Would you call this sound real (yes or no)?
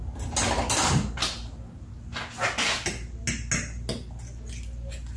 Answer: yes